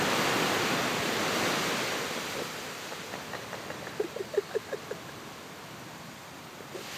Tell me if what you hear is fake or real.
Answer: real